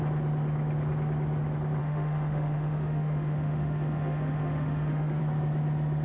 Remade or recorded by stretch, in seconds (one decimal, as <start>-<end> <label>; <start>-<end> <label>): 0.0-1.8 recorded; 1.8-5.2 remade; 5.2-6.0 recorded